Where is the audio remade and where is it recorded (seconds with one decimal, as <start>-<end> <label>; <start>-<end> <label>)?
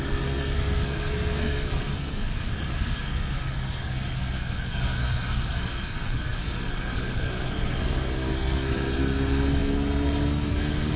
0.0-11.0 remade